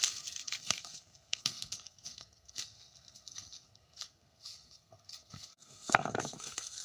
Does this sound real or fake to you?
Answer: fake